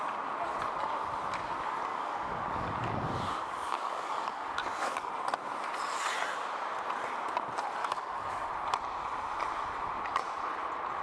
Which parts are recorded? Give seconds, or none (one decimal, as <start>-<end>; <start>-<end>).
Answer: 0.0-1.9; 5.1-7.8; 8.5-11.0